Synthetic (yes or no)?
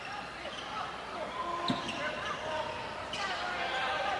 no